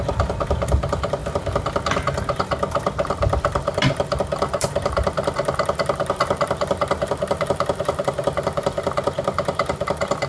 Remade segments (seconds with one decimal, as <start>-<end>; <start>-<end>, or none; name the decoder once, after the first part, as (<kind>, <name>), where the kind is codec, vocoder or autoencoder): none

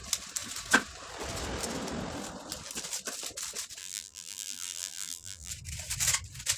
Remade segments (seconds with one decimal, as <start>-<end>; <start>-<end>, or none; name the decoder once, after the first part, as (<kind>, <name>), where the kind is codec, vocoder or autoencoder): 3.8-5.5 (vocoder, BigVGAN v2)

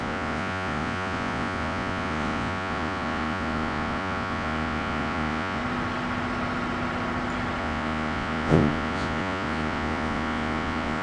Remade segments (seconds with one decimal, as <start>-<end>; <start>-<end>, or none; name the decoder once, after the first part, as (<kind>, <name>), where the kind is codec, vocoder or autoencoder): 0.0-5.6 (vocoder, Vocos); 7.6-11.0

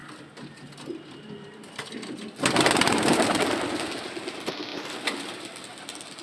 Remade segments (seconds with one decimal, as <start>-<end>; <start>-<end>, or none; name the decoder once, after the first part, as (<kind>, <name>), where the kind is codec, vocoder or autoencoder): none

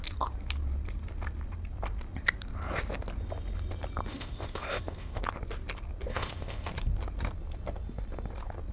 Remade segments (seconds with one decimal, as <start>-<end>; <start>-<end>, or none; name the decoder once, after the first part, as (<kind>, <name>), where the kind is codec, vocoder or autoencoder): 4.1-5.2 (codec, ZipCodec); 6.1-6.7